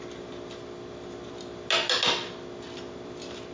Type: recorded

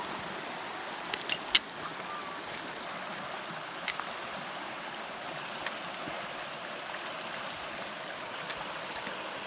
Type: recorded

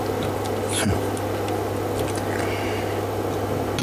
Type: recorded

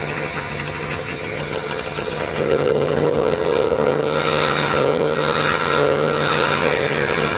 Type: remade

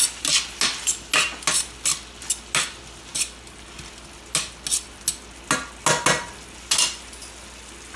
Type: recorded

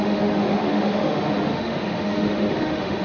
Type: remade